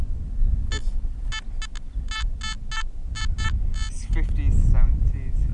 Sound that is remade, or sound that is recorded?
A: recorded